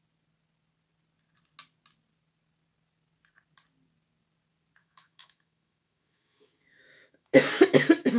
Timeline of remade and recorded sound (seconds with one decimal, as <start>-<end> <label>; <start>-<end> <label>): 0.0-4.8 recorded; 4.8-8.2 remade